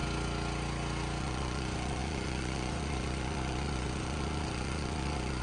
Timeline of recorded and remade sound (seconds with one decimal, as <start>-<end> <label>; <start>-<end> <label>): 0.0-1.2 recorded; 1.2-5.4 remade